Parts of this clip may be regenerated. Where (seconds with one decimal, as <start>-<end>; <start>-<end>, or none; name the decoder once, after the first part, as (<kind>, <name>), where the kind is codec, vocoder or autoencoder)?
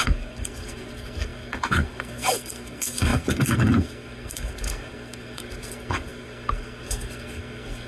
0.0-7.9 (codec, SNAC)